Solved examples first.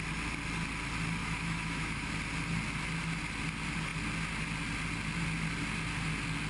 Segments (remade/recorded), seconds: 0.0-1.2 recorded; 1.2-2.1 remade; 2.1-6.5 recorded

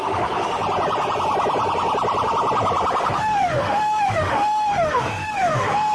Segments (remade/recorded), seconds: 0.0-0.6 remade; 0.6-3.0 recorded; 3.0-5.9 remade

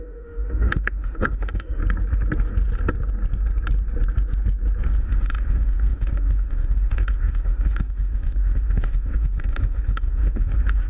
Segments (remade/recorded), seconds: 0.0-1.8 remade; 1.8-5.0 recorded; 5.0-10.9 remade